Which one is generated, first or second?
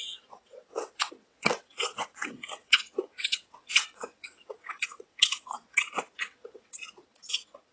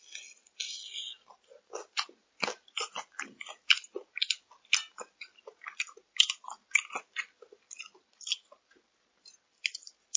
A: first